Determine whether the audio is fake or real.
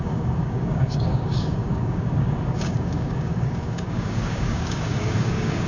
fake